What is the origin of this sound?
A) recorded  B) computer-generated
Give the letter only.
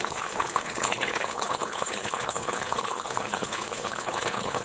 B